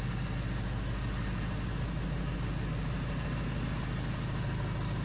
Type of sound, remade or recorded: recorded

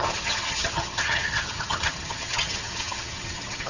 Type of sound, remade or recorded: remade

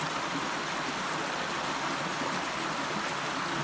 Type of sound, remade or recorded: recorded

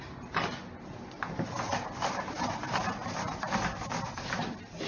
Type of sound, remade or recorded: recorded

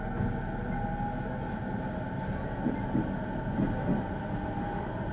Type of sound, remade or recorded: recorded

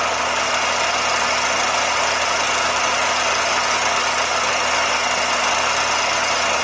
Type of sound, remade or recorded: recorded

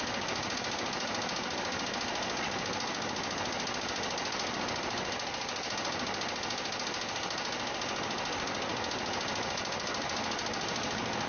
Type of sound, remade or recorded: recorded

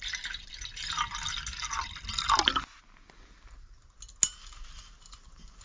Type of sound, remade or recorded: recorded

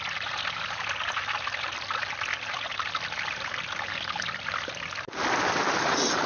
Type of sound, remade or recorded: recorded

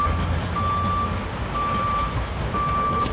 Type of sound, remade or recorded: recorded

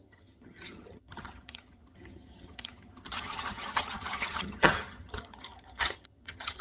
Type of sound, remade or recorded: remade